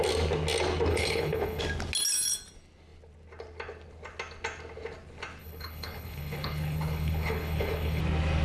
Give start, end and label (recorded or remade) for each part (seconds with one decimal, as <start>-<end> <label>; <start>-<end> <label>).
0.0-0.9 recorded; 0.9-1.6 remade; 1.6-5.4 recorded; 5.4-8.0 remade; 8.0-8.4 recorded